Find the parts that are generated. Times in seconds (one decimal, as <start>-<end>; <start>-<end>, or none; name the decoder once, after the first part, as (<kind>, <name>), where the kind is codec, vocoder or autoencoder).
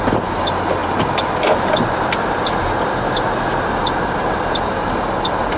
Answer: none